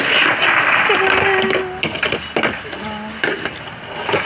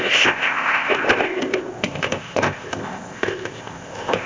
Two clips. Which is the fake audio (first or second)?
second